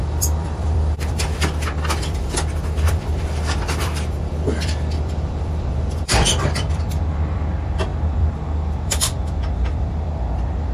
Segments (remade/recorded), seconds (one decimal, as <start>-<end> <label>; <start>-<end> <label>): 0.0-10.7 remade

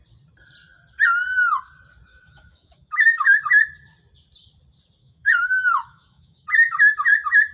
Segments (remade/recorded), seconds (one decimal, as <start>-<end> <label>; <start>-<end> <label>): 0.0-2.1 recorded; 2.1-3.4 remade; 3.4-5.0 recorded; 5.0-6.5 remade; 6.5-7.5 recorded

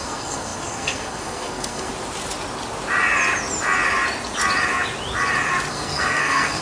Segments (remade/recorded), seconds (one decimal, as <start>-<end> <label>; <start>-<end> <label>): 0.0-1.9 remade; 1.9-5.7 recorded; 5.7-6.6 remade

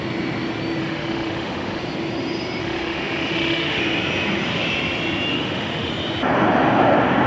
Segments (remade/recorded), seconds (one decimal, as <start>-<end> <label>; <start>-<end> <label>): 0.0-0.8 recorded; 0.8-1.8 remade; 1.8-2.6 recorded; 2.6-3.8 remade; 3.8-5.3 recorded; 5.3-5.9 remade; 5.9-7.3 recorded

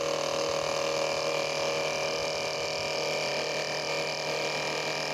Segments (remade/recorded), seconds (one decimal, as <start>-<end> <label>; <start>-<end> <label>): 0.0-5.1 recorded

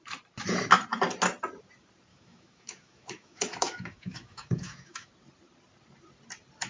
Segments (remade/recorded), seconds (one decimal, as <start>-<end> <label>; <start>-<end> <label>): 0.0-2.1 recorded; 2.1-5.1 remade; 5.1-6.7 recorded